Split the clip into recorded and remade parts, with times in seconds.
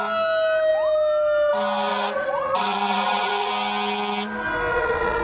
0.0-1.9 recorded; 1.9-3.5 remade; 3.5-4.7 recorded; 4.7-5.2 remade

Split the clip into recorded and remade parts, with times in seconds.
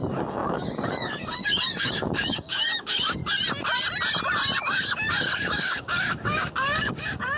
0.0-3.2 remade; 3.2-4.6 recorded; 4.6-7.4 remade